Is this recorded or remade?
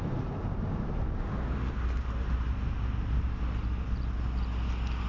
recorded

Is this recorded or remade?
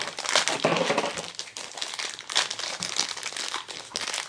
recorded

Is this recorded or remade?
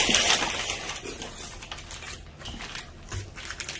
recorded